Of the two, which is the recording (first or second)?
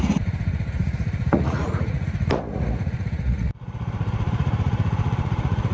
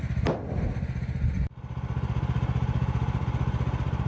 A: second